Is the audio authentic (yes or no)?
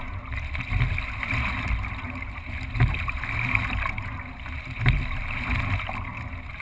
yes